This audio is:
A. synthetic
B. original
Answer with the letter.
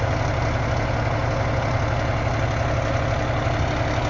B